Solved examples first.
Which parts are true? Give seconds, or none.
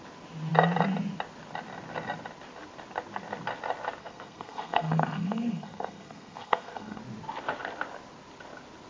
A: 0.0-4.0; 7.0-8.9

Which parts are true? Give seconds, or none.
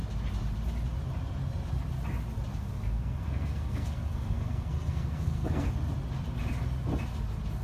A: 0.0-2.5; 5.7-7.6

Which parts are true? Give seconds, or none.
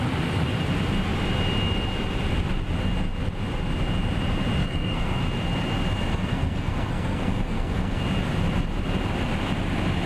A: 0.0-4.6; 5.2-6.1; 8.0-10.1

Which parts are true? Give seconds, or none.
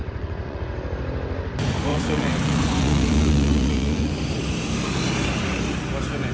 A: 0.6-1.9; 4.1-6.3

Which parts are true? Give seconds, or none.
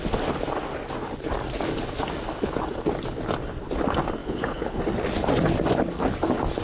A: 0.0-4.2; 4.8-6.6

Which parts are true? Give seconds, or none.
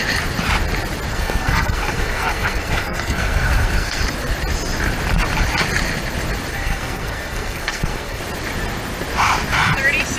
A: 0.0-1.1; 4.0-6.5; 8.2-10.2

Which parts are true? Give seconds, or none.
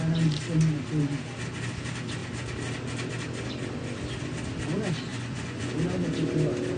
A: 0.0-5.1; 5.7-6.8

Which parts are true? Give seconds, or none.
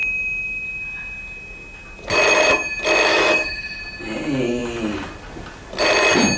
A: 0.0-3.1; 3.8-6.4